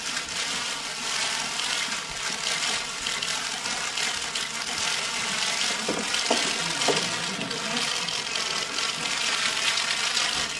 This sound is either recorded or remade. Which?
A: recorded